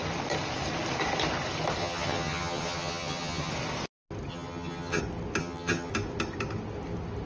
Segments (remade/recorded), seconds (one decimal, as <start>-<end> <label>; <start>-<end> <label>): 0.0-1.8 recorded; 1.8-3.5 remade; 3.5-4.3 recorded; 4.3-5.0 remade; 5.0-5.4 recorded; 5.4-5.9 remade; 5.9-7.3 recorded